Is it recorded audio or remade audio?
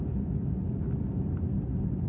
recorded